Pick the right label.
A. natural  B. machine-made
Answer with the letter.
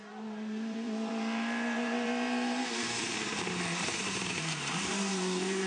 B